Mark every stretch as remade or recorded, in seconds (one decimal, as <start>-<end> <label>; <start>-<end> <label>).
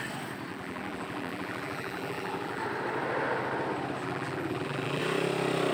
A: 0.0-0.5 recorded; 0.5-2.6 remade; 2.6-4.0 recorded; 4.0-5.0 remade; 5.0-5.7 recorded